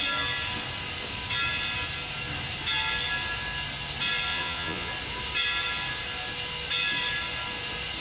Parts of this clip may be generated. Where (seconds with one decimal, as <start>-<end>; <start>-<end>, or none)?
4.3-4.9